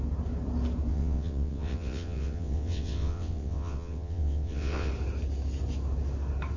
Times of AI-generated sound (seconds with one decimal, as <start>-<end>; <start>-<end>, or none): 0.9-4.9